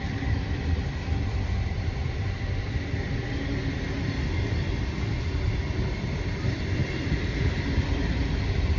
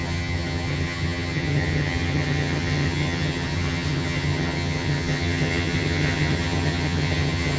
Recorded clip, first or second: first